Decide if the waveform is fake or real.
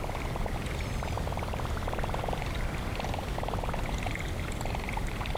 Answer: real